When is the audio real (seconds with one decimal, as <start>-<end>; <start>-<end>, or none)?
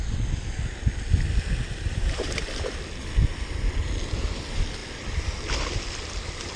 0.0-1.7; 2.3-6.6